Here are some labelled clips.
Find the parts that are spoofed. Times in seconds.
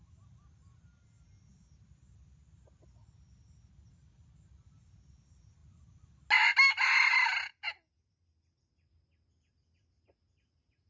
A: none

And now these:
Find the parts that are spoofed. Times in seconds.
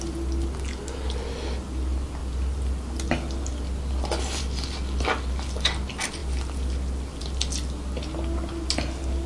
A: none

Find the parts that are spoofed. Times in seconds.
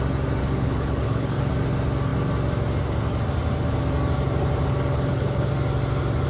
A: 0.4-1.5 (codec, HILCodec); 4.9-5.5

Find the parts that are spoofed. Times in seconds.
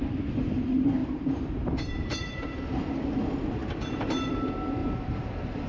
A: 1.0-2.6 (vocoder, BigVGAN v2); 3.6-4.3; 4.8-5.7